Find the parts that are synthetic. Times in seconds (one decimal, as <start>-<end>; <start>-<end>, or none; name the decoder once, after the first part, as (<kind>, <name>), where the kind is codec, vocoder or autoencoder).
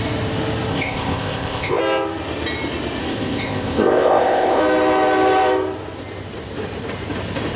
0.7-1.8 (codec, ZipCodec); 3.0-4.6